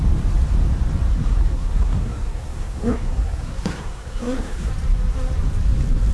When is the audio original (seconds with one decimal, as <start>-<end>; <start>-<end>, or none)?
0.0-1.1; 4.7-6.1